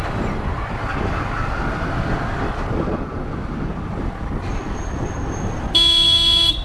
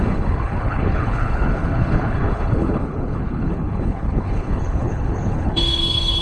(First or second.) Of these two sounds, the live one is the first